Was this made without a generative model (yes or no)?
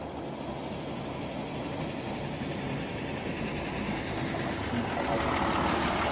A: yes